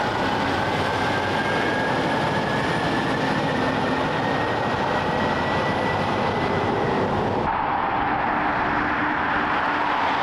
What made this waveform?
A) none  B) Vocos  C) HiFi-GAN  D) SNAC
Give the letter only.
A